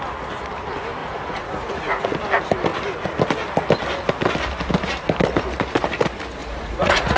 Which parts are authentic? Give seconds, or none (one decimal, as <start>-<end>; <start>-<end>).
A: 0.0-1.0; 2.1-6.4